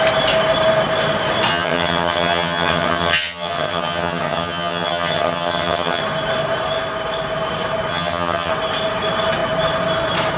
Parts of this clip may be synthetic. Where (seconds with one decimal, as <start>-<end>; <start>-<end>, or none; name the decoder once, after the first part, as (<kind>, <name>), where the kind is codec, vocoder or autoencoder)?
1.5-6.0 (vocoder, HiFi-GAN); 7.9-8.5